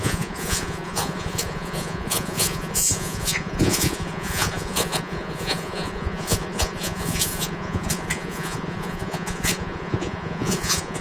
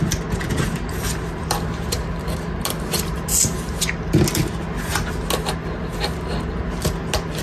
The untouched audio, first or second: second